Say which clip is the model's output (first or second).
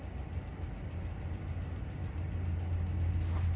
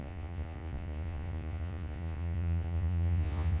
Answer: second